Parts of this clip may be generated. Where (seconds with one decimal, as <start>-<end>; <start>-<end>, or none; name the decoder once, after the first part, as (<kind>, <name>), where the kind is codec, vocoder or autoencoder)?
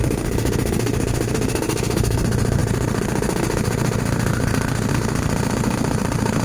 0.0-6.4 (autoencoder, DAC-VAE)